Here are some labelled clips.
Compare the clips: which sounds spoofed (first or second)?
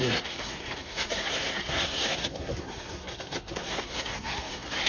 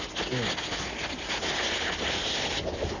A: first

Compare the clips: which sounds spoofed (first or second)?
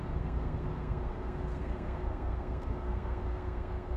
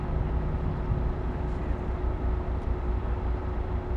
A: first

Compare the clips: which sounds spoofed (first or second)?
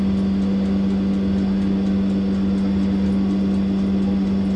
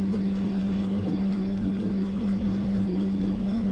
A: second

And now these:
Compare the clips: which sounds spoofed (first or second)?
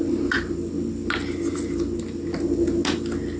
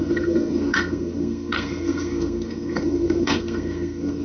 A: second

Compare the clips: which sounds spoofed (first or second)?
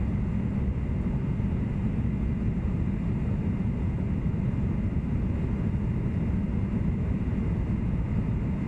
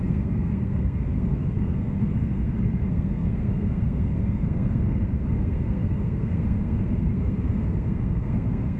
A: second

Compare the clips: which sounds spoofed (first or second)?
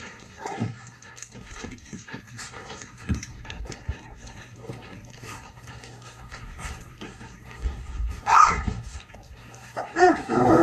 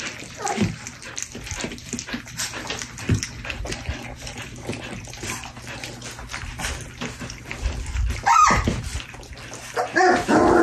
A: first